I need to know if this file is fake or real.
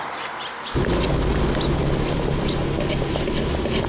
real